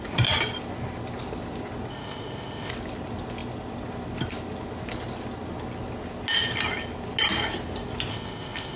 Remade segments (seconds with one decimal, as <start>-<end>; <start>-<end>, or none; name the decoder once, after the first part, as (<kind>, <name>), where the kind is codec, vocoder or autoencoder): 1.9-2.7 (codec, ZipCodec); 8.1-8.8